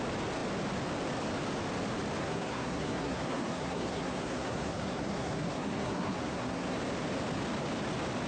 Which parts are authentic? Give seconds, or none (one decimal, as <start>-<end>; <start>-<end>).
0.0-2.2; 6.8-8.3